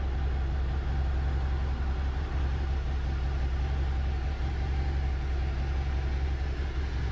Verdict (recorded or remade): recorded